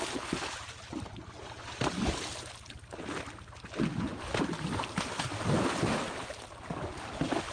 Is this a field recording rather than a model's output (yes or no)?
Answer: yes